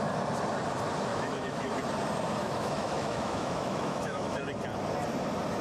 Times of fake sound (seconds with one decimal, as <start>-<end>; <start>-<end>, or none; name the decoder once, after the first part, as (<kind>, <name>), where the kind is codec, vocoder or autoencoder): 1.1-1.7 (autoencoder, DAC-VAE); 2.4-4.4